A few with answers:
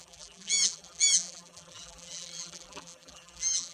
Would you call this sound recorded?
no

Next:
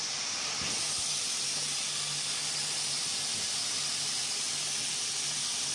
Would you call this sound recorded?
yes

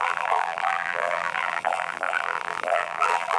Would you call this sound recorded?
no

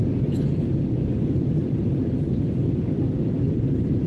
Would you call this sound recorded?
no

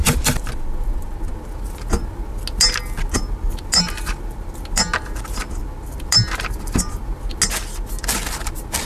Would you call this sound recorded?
yes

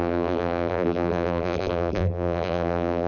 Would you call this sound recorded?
no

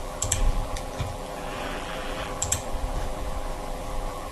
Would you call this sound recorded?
no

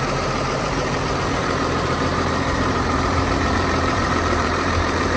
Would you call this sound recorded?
no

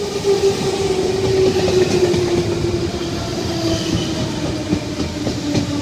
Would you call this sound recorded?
yes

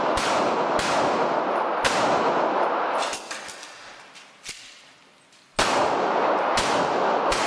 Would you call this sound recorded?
yes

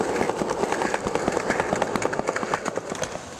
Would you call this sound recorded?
yes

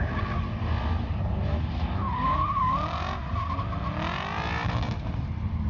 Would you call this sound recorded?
yes